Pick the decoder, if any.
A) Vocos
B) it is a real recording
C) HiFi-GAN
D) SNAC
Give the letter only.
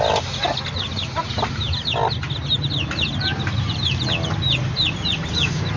B